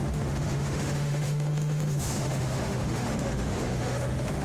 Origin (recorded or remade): remade